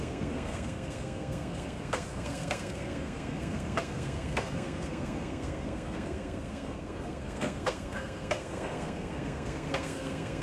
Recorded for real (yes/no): no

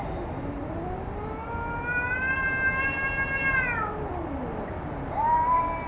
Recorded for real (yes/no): yes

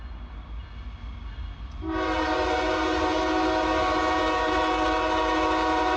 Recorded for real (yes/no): yes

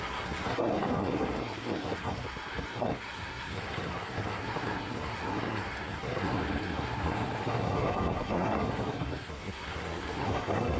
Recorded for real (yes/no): no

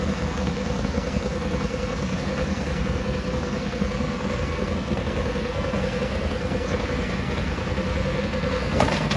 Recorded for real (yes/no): no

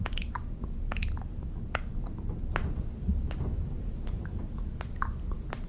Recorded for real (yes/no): yes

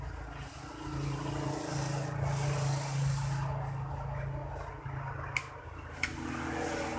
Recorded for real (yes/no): yes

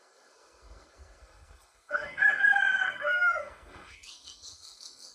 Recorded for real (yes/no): no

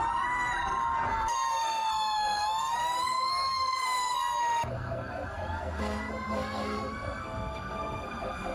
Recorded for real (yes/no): no